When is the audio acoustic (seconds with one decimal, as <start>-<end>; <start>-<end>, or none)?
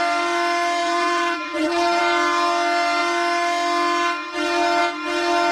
0.0-0.8; 2.0-5.5